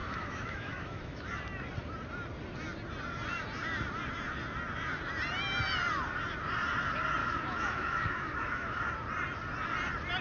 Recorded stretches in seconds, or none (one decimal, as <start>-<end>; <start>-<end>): 1.3-7.2; 8.8-10.2